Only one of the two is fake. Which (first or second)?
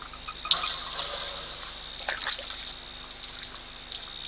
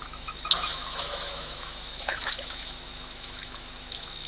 second